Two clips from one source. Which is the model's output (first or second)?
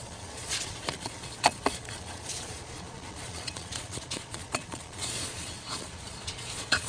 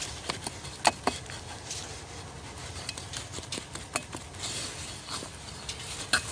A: first